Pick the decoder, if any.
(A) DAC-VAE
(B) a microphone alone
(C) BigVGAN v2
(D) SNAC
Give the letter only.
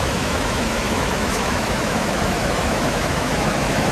A